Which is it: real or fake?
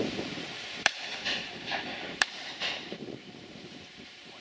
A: fake